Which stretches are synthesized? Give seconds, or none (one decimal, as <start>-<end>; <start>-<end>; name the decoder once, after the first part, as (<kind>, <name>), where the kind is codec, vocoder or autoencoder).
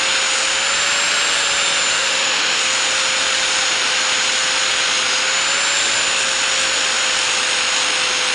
1.9-2.6 (autoencoder, DAC-VAE)